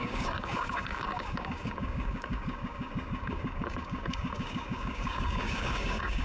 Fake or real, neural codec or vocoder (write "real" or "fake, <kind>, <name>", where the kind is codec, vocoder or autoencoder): fake, codec, DAC